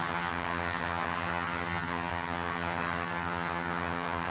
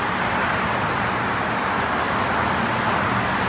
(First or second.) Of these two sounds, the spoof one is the first